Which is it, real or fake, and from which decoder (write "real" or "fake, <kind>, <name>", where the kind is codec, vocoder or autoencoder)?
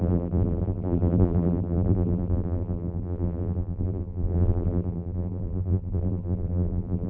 fake, vocoder, BigVGAN v2